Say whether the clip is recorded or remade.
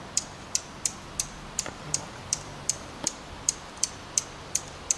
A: remade